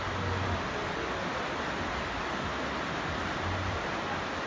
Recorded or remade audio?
recorded